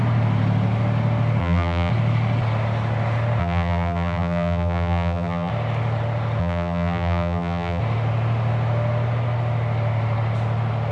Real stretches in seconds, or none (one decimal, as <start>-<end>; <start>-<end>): 0.0-1.4; 1.9-3.4; 5.5-6.4; 7.8-10.9